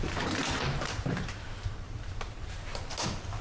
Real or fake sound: fake